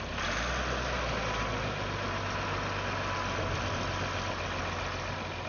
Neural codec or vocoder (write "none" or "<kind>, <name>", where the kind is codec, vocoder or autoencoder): none